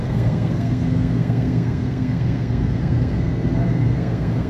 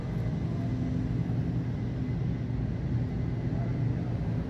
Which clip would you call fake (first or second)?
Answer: first